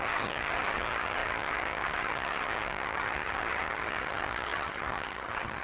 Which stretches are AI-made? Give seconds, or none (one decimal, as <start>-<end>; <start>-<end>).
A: 0.0-5.6